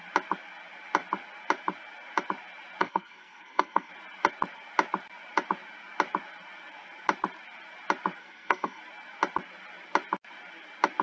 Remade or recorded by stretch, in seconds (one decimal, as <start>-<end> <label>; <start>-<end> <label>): 0.0-2.8 recorded; 2.8-3.9 remade; 3.9-8.2 recorded; 8.2-8.8 remade; 8.8-11.0 recorded